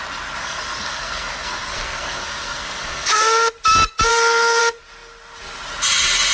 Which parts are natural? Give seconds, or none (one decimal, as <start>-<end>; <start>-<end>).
0.0-0.4; 3.2-4.1; 4.6-6.3